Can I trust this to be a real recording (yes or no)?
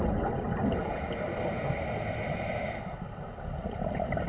yes